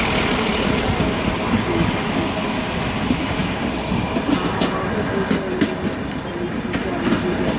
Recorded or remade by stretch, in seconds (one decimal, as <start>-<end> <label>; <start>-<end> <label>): 0.0-7.6 recorded